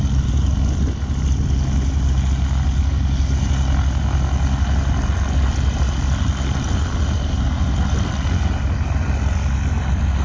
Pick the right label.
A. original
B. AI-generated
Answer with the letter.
A